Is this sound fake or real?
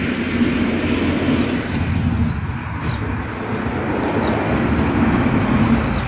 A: real